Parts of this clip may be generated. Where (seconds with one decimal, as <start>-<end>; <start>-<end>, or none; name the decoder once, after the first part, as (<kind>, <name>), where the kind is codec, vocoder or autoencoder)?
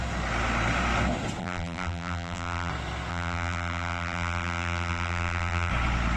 1.4-2.7 (vocoder, BigVGAN v2); 3.1-5.7